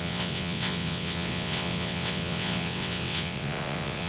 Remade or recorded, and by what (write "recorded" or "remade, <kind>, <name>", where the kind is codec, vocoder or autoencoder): remade, vocoder, WaveNeXt